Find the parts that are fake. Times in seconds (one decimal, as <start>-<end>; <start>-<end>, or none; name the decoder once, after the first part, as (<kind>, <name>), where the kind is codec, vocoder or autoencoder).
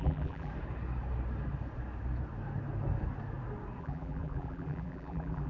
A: 0.0-0.5 (vocoder, BigVGAN v2); 3.8-5.5